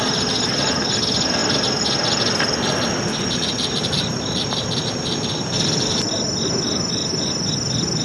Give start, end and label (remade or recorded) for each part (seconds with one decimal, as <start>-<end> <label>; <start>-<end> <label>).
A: 0.0-8.0 recorded